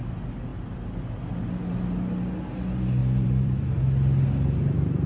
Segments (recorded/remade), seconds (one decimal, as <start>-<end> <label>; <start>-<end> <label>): 0.0-0.5 recorded; 0.5-1.4 remade; 1.4-3.0 recorded; 3.0-3.8 remade; 3.8-5.1 recorded